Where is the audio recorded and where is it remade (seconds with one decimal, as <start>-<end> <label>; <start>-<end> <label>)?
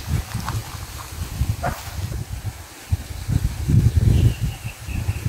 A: 0.0-5.3 recorded